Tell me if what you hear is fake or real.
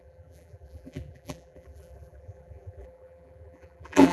fake